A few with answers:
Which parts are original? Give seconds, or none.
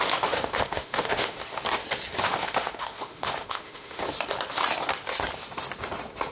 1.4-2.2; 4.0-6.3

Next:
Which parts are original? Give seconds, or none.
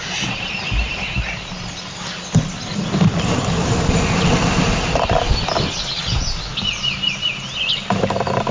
0.0-8.5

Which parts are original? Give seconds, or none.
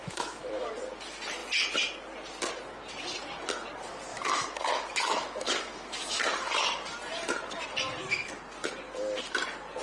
0.7-4.1; 6.2-9.8